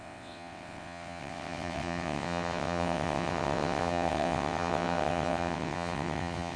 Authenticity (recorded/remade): remade